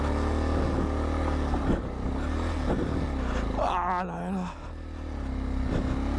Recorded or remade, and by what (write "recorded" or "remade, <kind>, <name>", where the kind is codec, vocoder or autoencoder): recorded